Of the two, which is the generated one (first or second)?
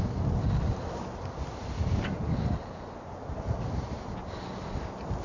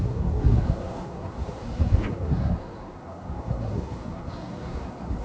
second